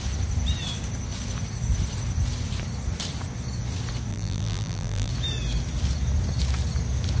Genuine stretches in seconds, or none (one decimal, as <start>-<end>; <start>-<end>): 0.0-4.1; 5.1-7.2